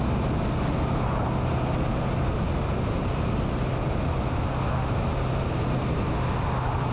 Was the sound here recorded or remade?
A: recorded